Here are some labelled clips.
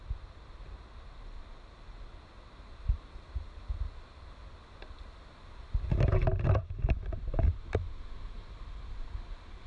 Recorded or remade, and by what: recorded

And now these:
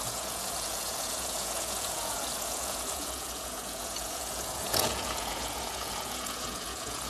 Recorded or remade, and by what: remade, vocoder, Vocos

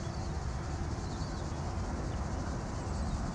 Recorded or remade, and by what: recorded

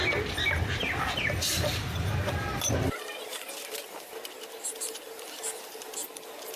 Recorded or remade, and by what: remade, vocoder, BigVGAN v2